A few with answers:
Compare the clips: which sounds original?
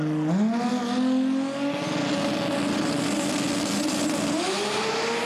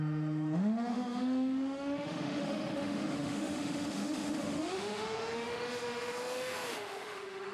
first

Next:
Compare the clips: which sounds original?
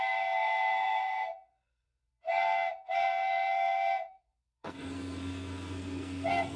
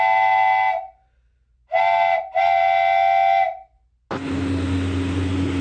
second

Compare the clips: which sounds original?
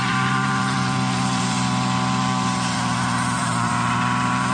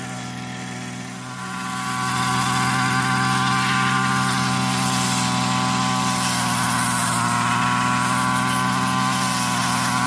second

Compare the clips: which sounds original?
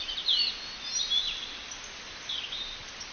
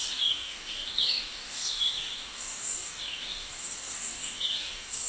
first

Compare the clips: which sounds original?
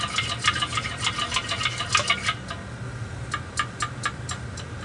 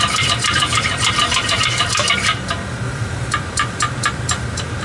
first